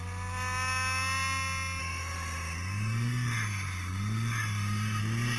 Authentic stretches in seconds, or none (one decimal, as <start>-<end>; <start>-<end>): 0.0-1.8; 5.0-5.4